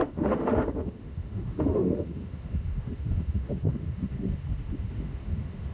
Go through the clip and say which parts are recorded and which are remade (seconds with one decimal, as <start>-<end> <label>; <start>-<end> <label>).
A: 0.0-5.7 remade